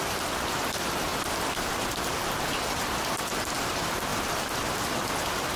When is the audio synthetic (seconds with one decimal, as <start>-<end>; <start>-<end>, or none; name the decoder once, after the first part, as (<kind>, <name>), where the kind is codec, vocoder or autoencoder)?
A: 0.0-1.1 (vocoder, BigVGAN v2); 2.0-5.6